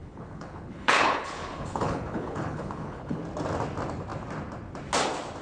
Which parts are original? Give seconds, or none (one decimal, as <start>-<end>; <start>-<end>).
3.2-5.4